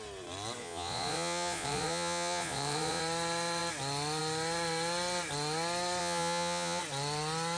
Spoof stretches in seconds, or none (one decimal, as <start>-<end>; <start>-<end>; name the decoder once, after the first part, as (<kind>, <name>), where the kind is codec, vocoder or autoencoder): 0.6-3.0 (vocoder, Vocos); 6.0-6.8